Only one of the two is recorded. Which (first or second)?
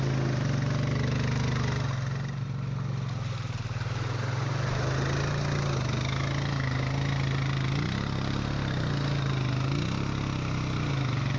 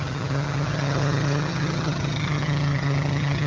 first